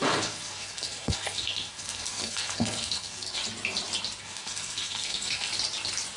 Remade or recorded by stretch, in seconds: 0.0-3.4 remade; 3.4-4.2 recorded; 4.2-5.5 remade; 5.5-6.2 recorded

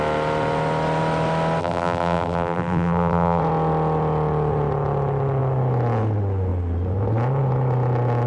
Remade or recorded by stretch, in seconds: 0.0-1.6 recorded; 1.6-3.4 remade; 3.4-8.3 recorded